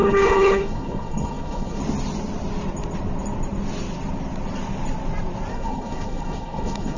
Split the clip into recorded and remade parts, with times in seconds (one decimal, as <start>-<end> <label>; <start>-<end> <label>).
0.0-1.8 remade; 1.8-5.5 recorded; 5.5-7.0 remade